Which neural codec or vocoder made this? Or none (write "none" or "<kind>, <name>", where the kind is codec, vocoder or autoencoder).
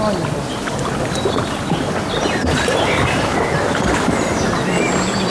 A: none